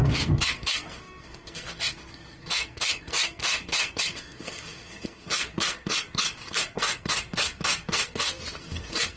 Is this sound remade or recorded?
remade